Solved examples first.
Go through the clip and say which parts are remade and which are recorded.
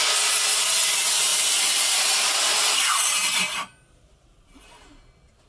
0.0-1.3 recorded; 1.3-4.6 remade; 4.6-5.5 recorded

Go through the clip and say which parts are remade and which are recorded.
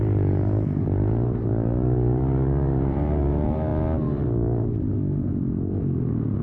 0.0-3.7 remade; 3.7-6.4 recorded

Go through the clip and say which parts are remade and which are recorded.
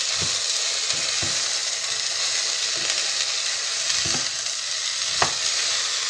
0.0-6.1 recorded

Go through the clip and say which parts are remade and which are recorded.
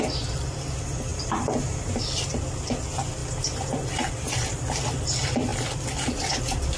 0.0-1.1 recorded; 1.1-2.5 remade; 2.5-3.2 recorded; 3.2-4.1 remade; 4.1-5.5 recorded; 5.5-6.8 remade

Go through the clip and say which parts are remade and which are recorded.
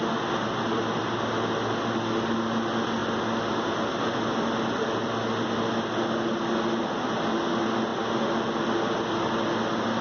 0.0-10.0 recorded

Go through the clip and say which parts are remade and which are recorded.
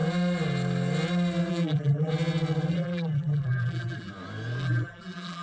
0.0-1.5 recorded; 1.5-2.1 remade; 2.1-2.7 recorded; 2.7-4.1 remade; 4.1-4.6 recorded; 4.6-5.4 remade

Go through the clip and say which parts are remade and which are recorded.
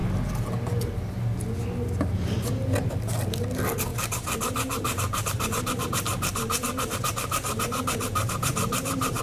0.0-3.9 recorded; 3.9-9.2 remade